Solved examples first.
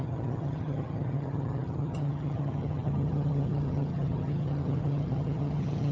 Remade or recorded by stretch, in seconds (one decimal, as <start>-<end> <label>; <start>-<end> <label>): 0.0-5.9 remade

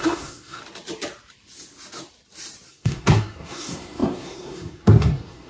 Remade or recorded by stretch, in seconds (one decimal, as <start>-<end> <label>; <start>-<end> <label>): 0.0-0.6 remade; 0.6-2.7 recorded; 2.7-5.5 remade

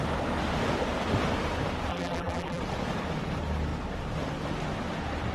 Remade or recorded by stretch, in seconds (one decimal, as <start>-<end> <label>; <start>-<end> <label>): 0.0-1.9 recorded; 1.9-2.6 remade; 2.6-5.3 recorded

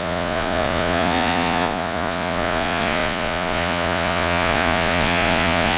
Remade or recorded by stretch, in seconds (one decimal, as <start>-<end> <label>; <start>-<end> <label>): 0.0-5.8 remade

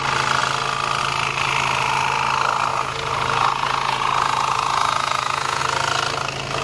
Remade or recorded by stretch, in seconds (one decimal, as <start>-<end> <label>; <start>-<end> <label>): 0.0-2.7 recorded; 2.7-5.6 remade; 5.6-6.6 recorded

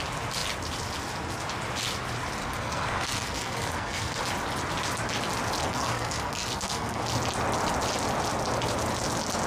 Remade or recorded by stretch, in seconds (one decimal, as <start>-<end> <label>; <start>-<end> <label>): 0.0-2.4 recorded; 2.4-4.2 remade; 4.2-5.6 recorded; 5.6-7.0 remade; 7.0-9.5 recorded

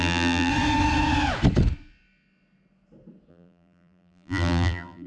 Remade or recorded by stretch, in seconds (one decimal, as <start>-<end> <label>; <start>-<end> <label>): 0.0-0.5 remade; 0.5-3.3 recorded; 3.3-5.1 remade

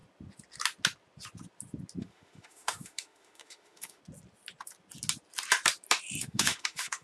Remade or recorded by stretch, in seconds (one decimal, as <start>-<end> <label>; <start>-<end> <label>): 0.0-2.0 recorded; 2.0-4.0 remade; 4.0-6.2 recorded; 6.2-7.0 remade